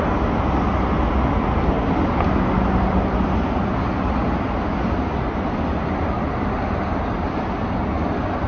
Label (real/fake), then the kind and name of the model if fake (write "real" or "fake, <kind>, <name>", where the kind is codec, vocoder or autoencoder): real